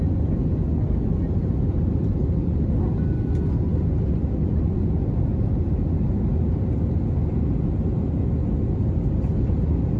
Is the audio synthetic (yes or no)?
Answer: no